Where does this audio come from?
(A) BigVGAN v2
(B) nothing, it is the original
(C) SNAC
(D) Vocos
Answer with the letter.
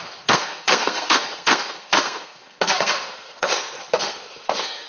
C